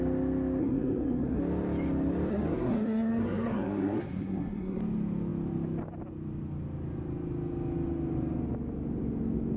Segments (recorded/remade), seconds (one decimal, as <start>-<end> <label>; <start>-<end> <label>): 0.0-0.6 recorded; 0.6-1.4 remade; 1.4-2.3 recorded; 2.3-4.8 remade; 4.8-9.6 recorded